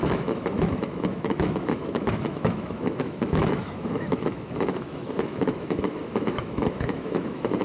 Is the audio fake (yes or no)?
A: yes